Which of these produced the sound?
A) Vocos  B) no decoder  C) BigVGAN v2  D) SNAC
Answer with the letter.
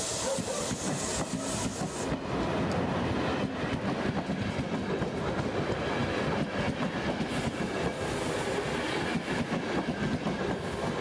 B